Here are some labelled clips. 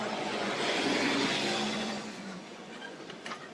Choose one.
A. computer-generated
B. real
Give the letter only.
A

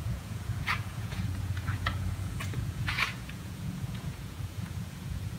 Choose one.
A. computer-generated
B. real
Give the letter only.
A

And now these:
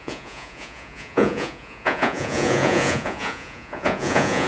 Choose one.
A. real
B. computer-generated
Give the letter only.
B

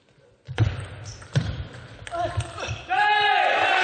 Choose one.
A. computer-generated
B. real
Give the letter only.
B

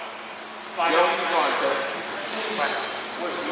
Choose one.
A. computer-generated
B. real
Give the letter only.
B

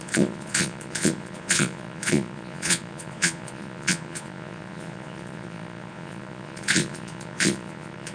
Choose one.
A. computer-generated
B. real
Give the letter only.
A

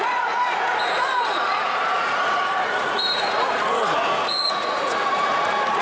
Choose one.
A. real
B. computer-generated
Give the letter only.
B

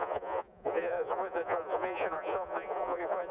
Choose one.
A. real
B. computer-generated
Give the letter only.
B